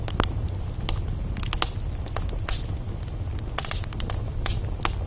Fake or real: real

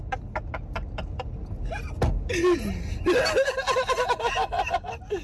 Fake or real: real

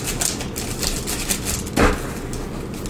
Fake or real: real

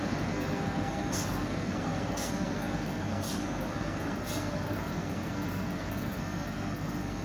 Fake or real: fake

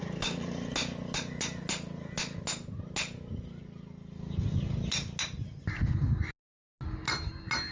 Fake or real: real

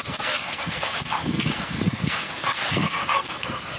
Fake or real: fake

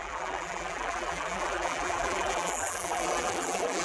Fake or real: fake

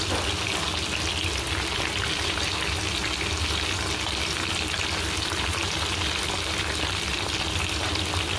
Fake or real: real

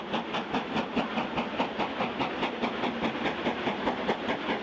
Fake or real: real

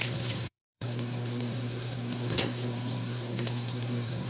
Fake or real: fake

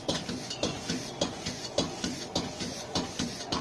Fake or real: fake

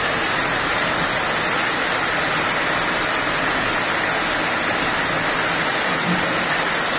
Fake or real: real